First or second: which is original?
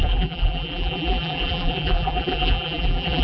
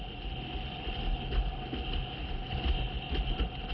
second